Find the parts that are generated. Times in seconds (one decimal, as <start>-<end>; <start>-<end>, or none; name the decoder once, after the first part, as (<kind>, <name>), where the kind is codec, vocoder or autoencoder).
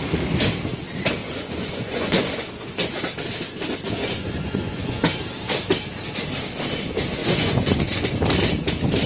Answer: 1.2-2.9 (vocoder, Vocos); 4.0-5.0; 7.2-8.1